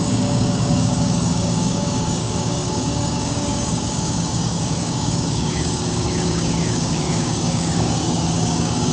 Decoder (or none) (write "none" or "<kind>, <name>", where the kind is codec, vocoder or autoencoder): codec, DAC